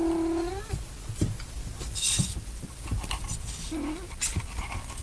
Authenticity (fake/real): real